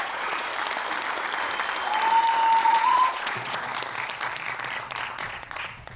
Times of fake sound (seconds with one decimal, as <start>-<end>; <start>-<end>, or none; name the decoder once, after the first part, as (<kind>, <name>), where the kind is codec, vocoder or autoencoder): 0.0-0.5 (vocoder, Vocos); 2.6-3.7; 5.1-6.0

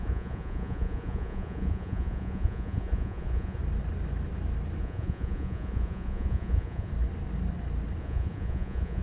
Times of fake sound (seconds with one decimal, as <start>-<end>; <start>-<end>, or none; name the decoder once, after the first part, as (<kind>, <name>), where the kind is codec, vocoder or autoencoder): 0.0-3.6 (vocoder, Vocos); 4.8-6.9; 8.0-9.0

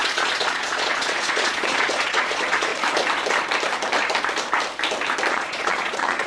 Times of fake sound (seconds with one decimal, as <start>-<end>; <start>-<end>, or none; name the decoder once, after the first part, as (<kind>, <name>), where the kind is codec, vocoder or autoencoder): 0.0-2.7 (vocoder, Vocos); 5.3-6.3

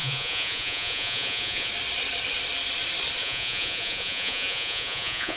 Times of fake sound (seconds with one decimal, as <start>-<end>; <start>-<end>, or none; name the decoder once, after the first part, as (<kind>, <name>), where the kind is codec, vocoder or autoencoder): 0.0-1.7 (vocoder, Vocos); 3.2-5.4